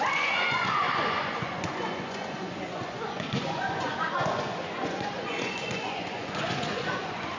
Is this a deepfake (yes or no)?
yes